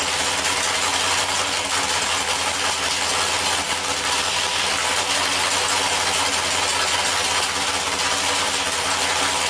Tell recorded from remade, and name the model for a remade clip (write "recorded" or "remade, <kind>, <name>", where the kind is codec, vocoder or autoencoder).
recorded